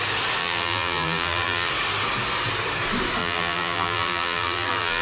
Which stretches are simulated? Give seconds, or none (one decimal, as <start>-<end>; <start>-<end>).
0.4-1.7; 3.2-5.0